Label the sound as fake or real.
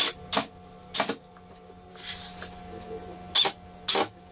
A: real